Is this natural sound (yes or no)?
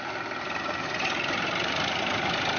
yes